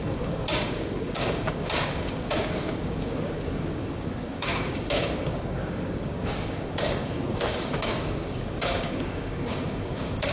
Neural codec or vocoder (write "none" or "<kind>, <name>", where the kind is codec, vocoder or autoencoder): codec, DAC